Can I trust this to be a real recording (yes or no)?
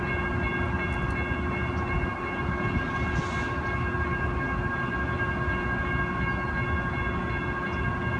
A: yes